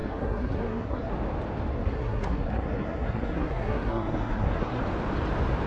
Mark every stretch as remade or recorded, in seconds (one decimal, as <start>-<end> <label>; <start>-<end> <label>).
0.0-1.1 remade; 1.1-1.7 recorded; 1.7-4.8 remade; 4.8-5.7 recorded